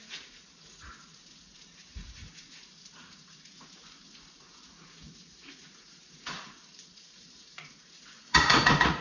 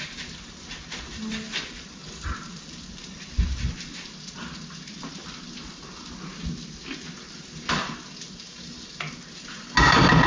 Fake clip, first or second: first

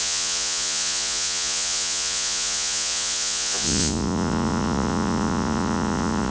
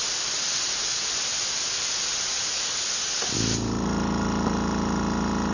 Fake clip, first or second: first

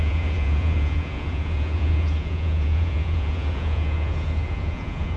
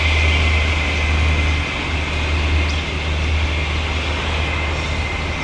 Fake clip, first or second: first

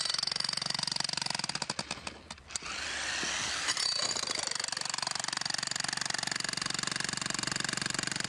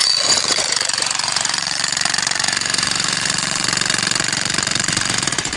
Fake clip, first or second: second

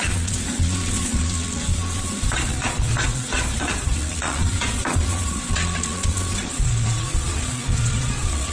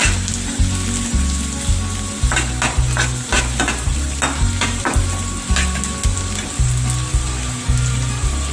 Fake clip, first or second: first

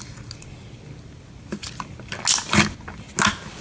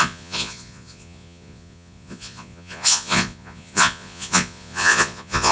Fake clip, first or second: second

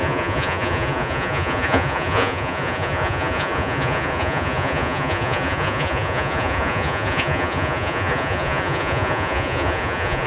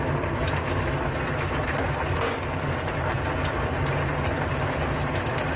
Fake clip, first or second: first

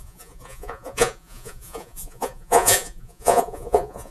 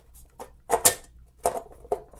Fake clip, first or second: first